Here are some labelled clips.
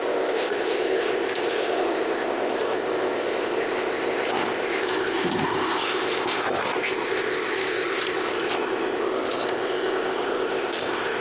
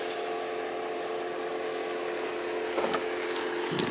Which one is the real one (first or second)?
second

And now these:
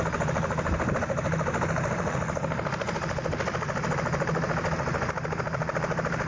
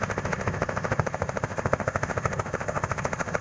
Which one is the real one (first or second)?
first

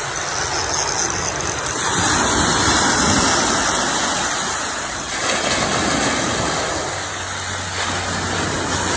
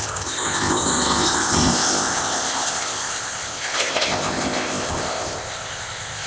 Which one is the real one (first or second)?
first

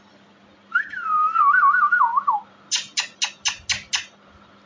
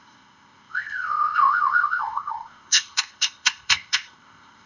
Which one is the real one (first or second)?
first